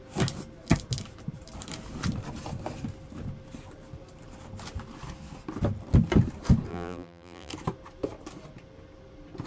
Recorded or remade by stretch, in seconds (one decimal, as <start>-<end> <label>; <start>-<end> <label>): 0.0-6.7 recorded; 6.7-7.5 remade; 7.5-9.5 recorded